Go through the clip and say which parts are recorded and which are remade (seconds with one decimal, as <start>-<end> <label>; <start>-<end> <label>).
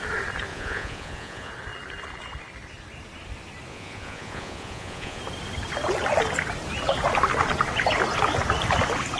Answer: 0.0-0.5 recorded; 0.5-1.5 remade; 1.5-3.7 recorded; 3.7-5.2 remade; 5.2-9.2 recorded